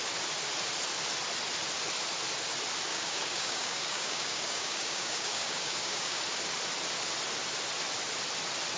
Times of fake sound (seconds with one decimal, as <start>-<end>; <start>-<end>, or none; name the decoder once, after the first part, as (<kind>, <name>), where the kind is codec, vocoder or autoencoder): 2.9-6.2 (codec, DAC)